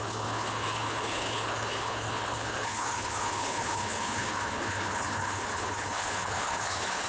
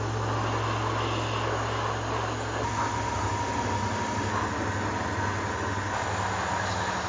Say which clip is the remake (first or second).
first